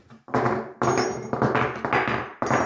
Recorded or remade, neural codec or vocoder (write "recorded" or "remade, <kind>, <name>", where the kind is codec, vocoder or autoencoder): recorded